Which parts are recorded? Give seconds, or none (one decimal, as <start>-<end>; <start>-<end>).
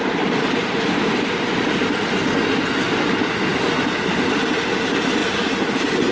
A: 0.0-3.5; 4.1-5.2